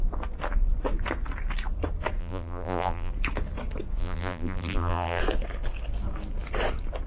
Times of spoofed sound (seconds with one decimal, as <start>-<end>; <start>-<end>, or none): 2.2-3.1; 4.0-5.2